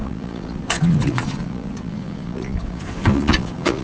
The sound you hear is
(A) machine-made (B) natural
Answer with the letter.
A